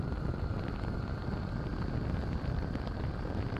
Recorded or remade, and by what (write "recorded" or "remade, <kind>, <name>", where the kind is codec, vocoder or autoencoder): recorded